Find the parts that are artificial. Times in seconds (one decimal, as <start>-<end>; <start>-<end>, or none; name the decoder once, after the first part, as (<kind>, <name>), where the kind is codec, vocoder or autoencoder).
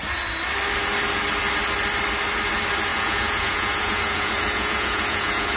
2.9-5.6 (vocoder, Vocos)